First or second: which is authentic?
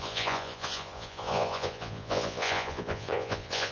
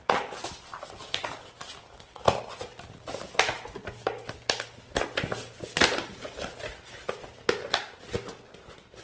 second